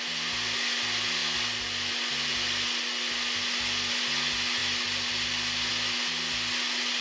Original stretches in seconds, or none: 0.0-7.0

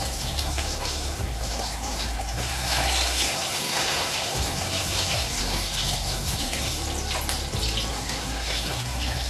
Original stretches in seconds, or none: 6.8-7.9

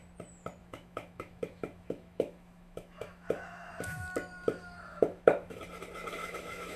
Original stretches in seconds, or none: 0.0-0.6; 3.7-4.9; 5.6-6.2

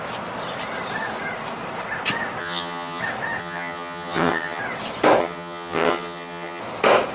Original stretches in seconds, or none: 0.0-2.4; 3.0-3.4; 4.6-5.2; 6.6-7.1

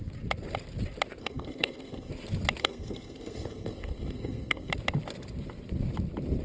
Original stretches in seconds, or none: 0.0-1.2; 2.1-2.6; 4.7-6.4

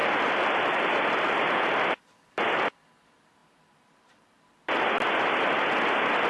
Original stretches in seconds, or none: 2.8-3.4; 5.6-6.3

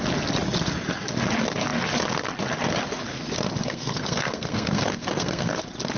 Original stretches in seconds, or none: 0.0-3.6; 5.6-6.0